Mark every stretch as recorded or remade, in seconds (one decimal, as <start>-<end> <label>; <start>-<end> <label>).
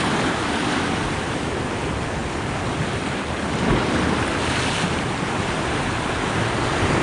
0.0-7.0 recorded